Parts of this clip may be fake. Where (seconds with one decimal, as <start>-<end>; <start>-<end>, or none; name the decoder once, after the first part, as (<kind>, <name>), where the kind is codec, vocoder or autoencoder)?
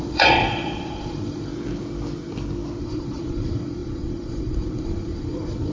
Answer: 0.0-1.5 (vocoder, Vocos); 2.8-5.7